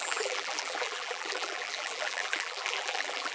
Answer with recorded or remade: remade